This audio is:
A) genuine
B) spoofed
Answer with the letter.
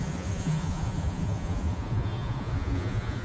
B